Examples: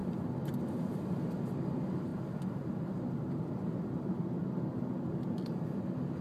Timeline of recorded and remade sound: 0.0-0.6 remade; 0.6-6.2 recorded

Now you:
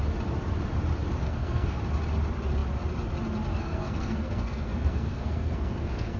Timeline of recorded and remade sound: 0.0-1.2 recorded; 1.2-1.8 remade; 1.8-3.5 recorded; 3.5-6.2 remade